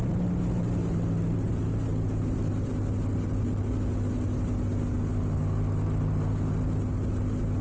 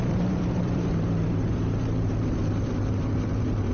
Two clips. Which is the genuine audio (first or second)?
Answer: first